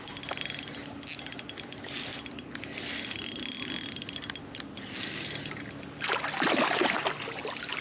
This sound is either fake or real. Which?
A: real